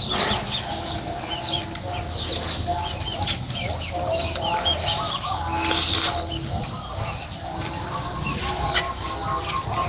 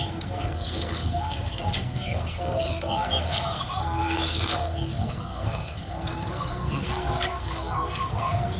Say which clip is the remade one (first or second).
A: second